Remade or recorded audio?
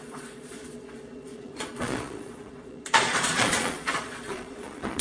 remade